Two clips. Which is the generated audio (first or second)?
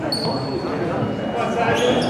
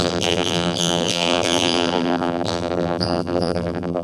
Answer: second